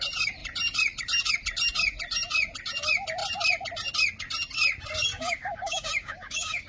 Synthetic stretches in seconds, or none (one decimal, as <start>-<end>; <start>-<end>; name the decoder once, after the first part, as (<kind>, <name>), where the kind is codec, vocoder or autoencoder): 5.1-6.7 (codec, DAC)